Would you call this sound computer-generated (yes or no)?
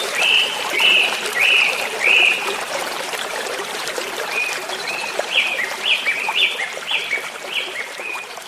yes